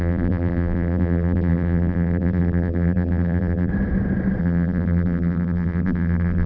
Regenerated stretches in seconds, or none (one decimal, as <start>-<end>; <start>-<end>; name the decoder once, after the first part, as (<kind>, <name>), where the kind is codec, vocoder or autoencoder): 0.0-3.7 (vocoder, BigVGAN v2); 4.4-6.5